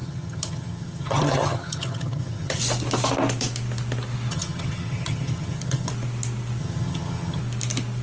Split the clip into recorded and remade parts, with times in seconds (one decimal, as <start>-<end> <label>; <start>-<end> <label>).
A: 0.0-2.6 remade; 2.6-4.3 recorded; 4.3-5.9 remade; 5.9-6.6 recorded; 6.6-7.4 remade; 7.4-8.0 recorded